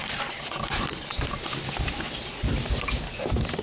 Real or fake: real